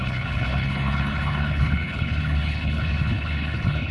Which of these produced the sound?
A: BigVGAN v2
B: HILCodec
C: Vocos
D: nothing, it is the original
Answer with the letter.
B